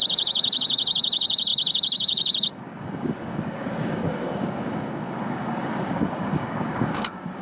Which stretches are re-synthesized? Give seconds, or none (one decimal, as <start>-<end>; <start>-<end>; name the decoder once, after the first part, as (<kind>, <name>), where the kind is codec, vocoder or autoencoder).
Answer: 0.0-7.4 (codec, DAC)